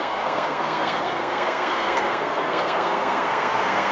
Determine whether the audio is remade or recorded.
remade